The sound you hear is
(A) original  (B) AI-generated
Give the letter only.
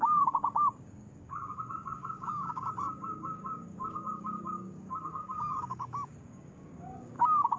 B